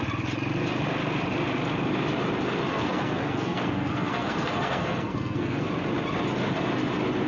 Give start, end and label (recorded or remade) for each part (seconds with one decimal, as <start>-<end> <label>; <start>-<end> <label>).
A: 0.0-2.7 recorded; 2.7-5.7 remade; 5.7-7.3 recorded